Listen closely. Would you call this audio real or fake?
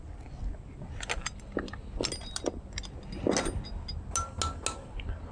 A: real